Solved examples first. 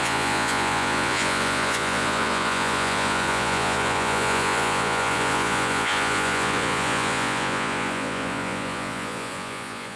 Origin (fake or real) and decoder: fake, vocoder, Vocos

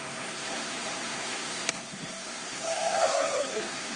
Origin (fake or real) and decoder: fake, codec, SNAC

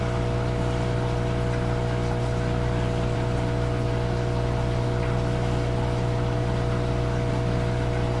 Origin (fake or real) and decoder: real